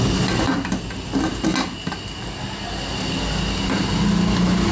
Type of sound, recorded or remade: recorded